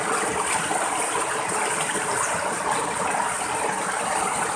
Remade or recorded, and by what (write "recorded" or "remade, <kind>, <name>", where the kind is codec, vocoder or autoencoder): recorded